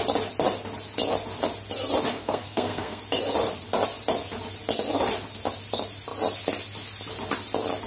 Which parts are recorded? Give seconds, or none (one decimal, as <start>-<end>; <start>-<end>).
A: 0.0-2.1; 3.0-7.9